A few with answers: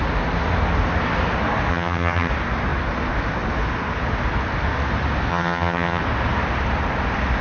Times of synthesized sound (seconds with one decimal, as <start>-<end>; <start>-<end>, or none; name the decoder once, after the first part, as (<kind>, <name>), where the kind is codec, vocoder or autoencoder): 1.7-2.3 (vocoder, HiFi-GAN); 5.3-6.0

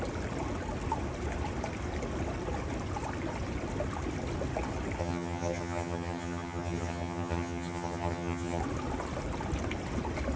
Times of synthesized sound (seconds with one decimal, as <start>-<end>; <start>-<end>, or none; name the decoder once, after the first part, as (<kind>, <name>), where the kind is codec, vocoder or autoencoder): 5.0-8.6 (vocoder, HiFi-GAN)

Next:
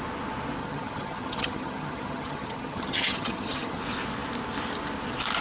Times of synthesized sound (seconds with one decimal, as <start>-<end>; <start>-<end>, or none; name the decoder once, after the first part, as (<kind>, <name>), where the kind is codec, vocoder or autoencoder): 0.6-3.8 (vocoder, HiFi-GAN)

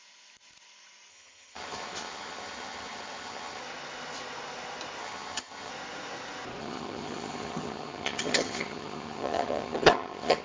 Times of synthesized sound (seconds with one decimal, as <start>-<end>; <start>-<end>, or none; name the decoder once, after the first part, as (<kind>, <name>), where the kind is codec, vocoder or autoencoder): 1.1-3.6 (vocoder, HiFi-GAN); 5.0-5.7; 6.6-10.4